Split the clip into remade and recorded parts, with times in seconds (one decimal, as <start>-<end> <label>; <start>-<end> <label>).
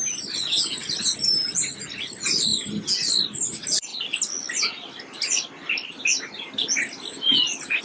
0.0-7.8 recorded